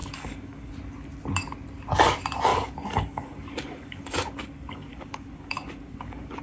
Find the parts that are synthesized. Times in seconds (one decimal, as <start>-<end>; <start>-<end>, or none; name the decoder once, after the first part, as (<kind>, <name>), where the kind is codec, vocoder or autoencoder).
0.0-0.7 (codec, DAC); 2.5-6.4

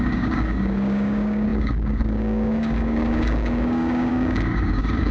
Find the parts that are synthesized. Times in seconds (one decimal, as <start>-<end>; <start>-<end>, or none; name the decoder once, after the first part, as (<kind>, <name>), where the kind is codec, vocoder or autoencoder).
0.0-5.1 (codec, DAC)

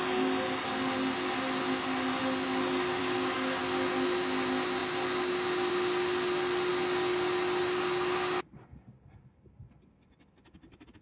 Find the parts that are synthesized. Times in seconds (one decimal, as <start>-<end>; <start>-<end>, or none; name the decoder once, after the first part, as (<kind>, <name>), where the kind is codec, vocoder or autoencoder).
3.0-3.6 (codec, DAC)

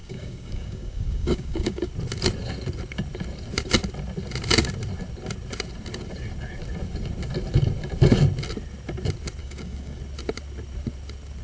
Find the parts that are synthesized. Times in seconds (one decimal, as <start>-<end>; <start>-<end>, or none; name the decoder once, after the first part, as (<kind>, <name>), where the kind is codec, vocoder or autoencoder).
0.0-1.9 (codec, DAC); 9.4-10.0

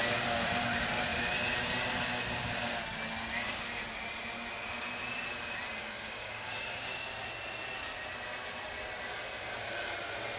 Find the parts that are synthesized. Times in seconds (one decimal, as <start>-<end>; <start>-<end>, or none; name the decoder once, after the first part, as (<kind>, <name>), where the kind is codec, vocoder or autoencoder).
5.8-7.1 (codec, DAC)

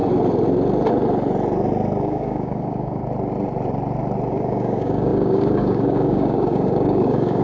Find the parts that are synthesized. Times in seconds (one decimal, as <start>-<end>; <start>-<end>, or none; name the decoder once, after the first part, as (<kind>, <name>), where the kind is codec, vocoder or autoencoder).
2.0-3.0 (codec, DAC); 4.3-7.4

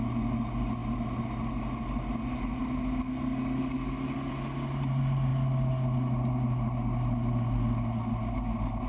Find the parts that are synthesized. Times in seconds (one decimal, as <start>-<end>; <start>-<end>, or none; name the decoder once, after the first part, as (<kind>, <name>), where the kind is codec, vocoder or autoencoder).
none